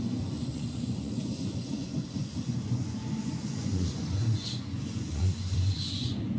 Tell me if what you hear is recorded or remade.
remade